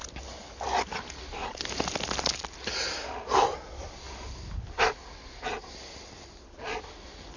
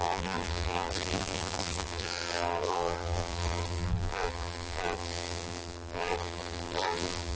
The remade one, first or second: second